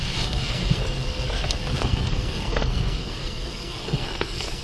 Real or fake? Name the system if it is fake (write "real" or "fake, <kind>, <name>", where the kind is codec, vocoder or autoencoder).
fake, codec, SNAC